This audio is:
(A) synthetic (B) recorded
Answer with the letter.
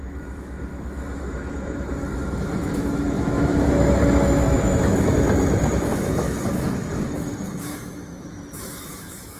A